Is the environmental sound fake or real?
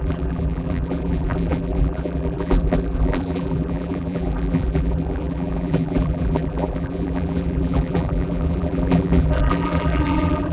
fake